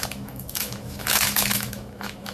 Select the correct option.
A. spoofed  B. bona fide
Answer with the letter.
A